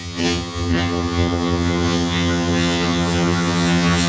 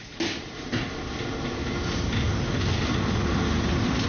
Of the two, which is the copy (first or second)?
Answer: first